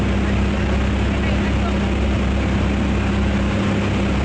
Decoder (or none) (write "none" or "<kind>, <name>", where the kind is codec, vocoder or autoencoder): none